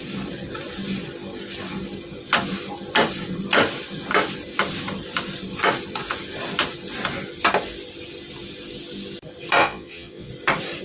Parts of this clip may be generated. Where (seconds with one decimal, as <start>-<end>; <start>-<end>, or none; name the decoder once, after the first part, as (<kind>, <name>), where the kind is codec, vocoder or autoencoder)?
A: 9.6-10.3 (vocoder, Vocos)